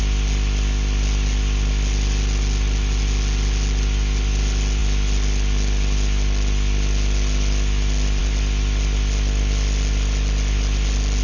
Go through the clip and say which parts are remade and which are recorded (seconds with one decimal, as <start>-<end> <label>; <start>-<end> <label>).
0.0-11.2 recorded